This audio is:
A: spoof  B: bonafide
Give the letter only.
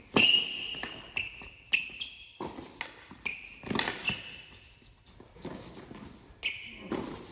B